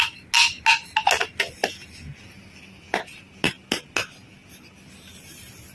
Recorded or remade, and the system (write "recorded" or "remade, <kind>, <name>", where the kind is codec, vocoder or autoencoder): recorded